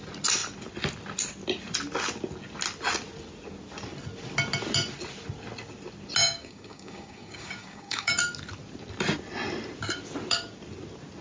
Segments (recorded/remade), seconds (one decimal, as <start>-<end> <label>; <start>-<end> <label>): 0.0-6.2 recorded; 6.2-8.1 remade; 8.1-11.2 recorded